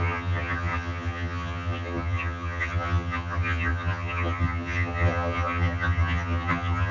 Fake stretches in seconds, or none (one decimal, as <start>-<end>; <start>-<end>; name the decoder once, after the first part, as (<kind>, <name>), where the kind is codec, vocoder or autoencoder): 0.0-6.9 (vocoder, HiFi-GAN)